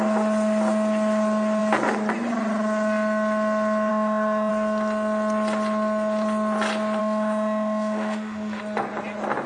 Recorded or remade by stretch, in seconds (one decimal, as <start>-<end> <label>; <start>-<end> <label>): 0.0-3.9 recorded; 3.9-4.5 remade; 4.5-7.0 recorded; 7.0-8.6 remade; 8.6-9.5 recorded